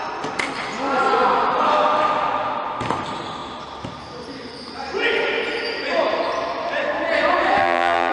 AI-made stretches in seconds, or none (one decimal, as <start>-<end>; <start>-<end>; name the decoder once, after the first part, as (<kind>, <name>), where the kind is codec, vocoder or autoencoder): 7.6-8.1 (vocoder, BigVGAN v2)